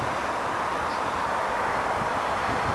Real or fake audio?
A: real